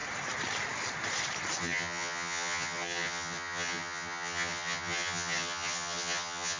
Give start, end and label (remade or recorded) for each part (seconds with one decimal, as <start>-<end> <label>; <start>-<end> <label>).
0.0-1.6 recorded; 1.6-6.6 remade